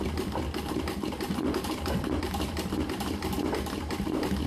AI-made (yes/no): no